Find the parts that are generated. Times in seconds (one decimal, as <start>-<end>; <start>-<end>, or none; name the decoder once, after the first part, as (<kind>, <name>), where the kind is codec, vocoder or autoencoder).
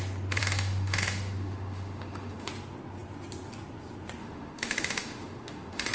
0.4-2.5 (autoencoder, DAC-VAE); 4.2-5.9